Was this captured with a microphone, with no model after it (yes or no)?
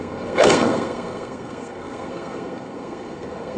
no